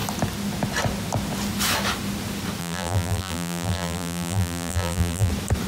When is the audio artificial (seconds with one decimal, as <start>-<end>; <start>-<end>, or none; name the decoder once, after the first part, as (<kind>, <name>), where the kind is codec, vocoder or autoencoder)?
2.6-5.3 (vocoder, BigVGAN v2)